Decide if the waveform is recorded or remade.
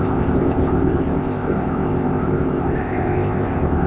remade